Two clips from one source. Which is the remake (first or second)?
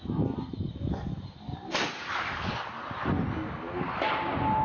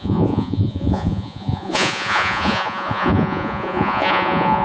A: second